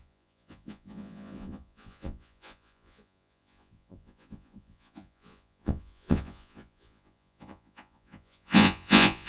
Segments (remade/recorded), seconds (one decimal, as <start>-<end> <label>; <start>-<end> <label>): 0.0-9.3 remade